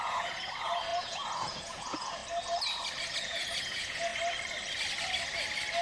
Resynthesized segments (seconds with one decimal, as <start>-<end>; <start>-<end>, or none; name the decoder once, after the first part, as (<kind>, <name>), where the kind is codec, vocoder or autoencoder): 0.0-2.2 (vocoder, Vocos); 3.2-4.1